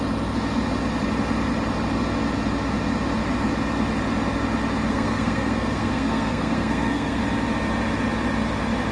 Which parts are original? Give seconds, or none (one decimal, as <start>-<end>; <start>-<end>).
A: 0.0-4.9; 7.2-8.9